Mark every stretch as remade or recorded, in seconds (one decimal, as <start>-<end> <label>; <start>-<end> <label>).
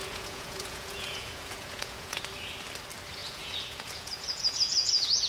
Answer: 0.0-2.2 remade; 2.2-3.2 recorded; 3.2-5.3 remade